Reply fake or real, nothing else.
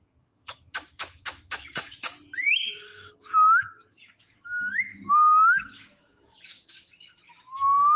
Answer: fake